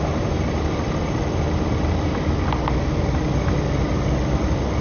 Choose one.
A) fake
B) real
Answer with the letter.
B